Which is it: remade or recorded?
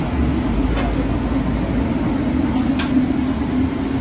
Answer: recorded